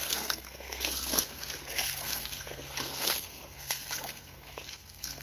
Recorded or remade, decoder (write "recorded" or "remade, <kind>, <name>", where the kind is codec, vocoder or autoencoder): remade, codec, SNAC